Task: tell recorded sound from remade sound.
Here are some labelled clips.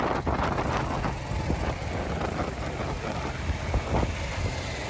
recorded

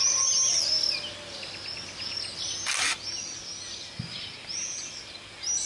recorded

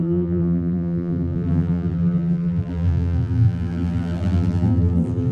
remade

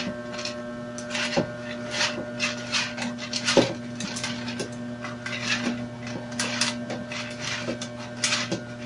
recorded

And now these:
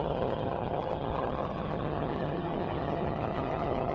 remade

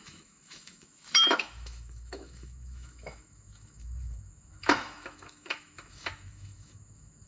remade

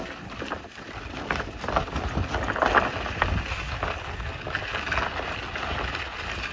recorded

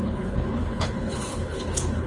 remade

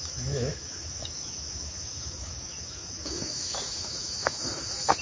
remade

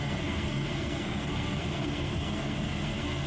remade